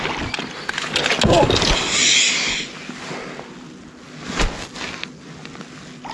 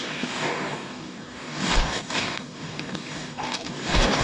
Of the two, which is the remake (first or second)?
second